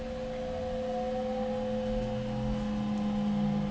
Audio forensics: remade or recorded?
recorded